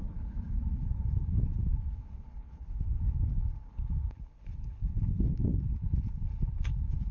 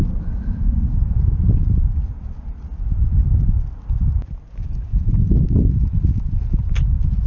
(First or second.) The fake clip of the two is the first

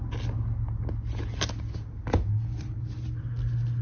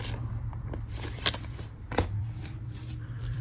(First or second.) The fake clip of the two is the second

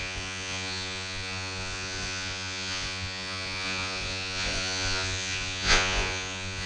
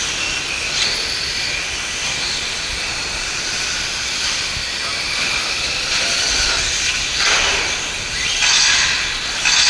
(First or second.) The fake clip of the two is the first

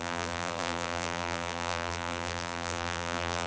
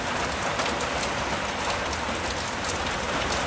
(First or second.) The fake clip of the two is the first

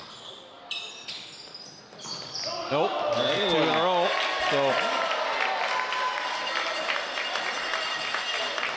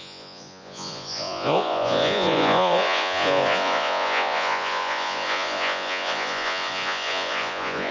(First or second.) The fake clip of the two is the second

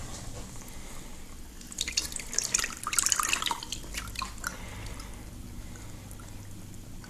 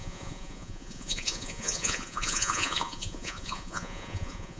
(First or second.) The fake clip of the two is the second